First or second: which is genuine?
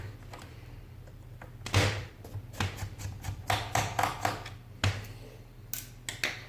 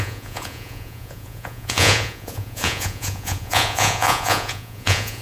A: first